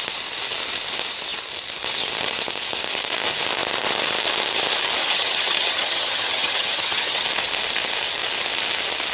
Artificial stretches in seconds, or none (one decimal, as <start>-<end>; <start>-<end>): 5.0-7.2